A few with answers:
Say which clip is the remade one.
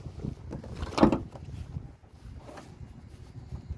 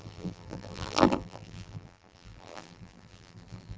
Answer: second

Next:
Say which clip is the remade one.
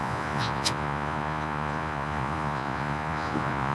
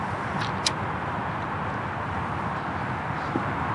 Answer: first